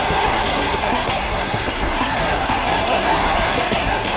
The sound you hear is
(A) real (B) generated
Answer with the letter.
B